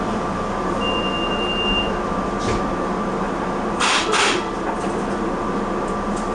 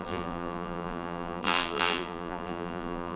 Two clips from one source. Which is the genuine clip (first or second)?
first